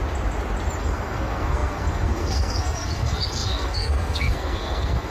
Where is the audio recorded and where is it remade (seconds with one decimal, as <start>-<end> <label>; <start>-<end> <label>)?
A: 0.0-0.8 recorded; 0.8-5.1 remade